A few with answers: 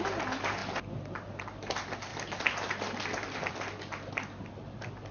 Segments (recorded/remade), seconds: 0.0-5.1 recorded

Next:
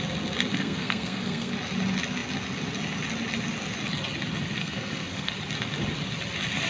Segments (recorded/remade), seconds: 0.0-0.5 recorded; 0.5-1.5 remade; 1.5-4.6 recorded; 4.6-5.3 remade; 5.3-6.7 recorded